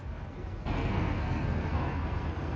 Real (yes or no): no